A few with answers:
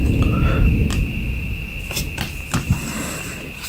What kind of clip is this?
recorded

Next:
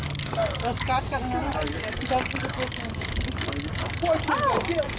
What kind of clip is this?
recorded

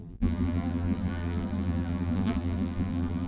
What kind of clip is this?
remade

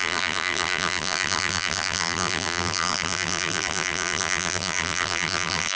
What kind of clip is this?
remade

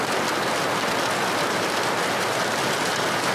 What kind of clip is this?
recorded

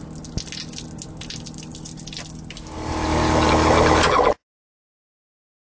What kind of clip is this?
recorded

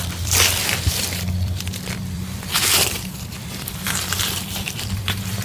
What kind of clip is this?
remade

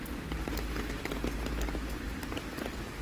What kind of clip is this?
recorded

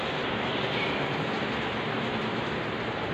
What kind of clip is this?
remade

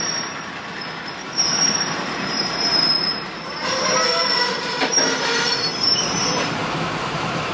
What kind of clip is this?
remade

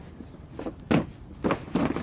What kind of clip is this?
recorded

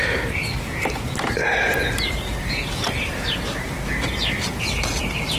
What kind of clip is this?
recorded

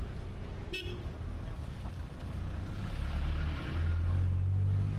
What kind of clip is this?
recorded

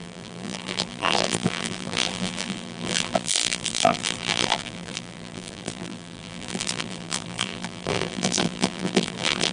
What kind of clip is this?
remade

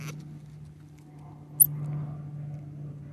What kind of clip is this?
recorded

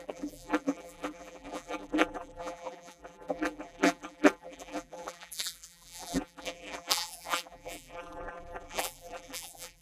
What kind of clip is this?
remade